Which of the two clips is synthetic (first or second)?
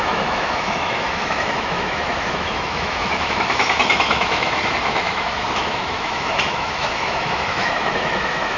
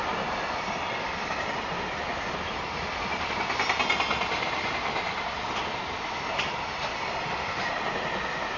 first